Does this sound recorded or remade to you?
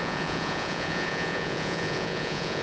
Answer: remade